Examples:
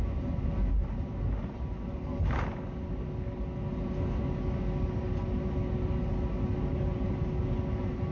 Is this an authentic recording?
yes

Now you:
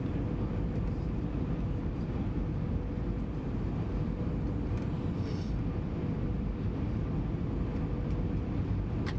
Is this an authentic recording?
yes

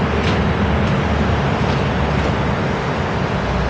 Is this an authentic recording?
yes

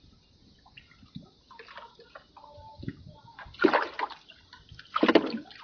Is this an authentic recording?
yes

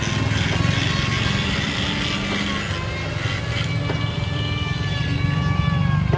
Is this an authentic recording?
yes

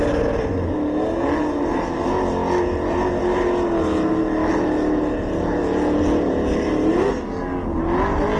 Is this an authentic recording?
yes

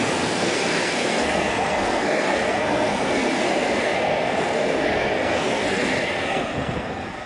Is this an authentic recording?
no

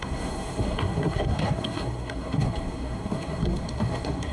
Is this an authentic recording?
no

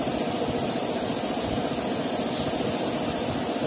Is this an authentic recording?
yes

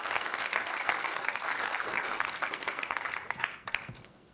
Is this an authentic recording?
no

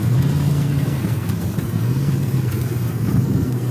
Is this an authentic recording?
no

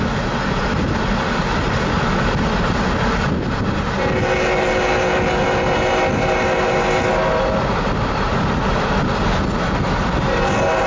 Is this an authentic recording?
yes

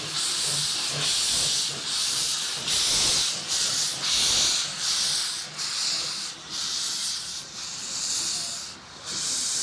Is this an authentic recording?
yes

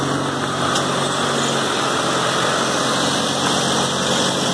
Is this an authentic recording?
yes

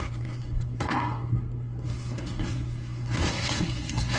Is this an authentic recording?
no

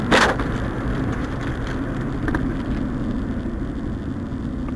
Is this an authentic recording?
yes